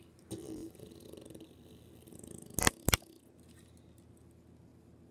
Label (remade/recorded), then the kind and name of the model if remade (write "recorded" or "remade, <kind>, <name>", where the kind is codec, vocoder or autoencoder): recorded